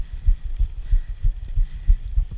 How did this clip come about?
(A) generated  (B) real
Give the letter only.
B